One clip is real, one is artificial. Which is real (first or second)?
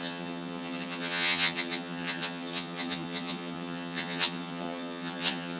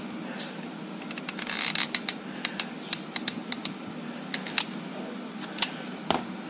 second